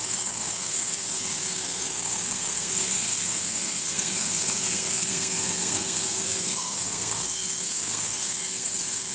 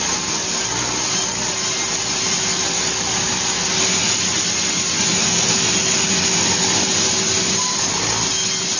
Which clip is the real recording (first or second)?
second